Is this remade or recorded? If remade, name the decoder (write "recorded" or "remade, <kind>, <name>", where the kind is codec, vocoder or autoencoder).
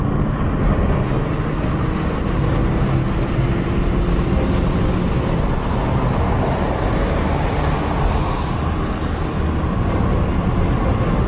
recorded